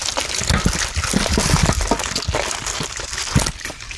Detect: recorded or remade recorded